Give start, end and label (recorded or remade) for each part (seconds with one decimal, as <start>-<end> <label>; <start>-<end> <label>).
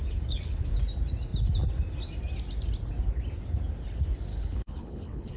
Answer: 0.0-0.8 remade; 0.8-4.3 recorded; 4.3-5.4 remade